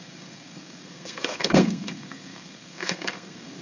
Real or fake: fake